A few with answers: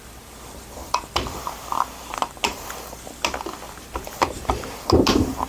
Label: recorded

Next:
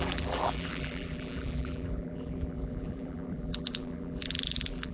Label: remade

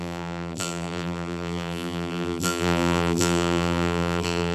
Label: remade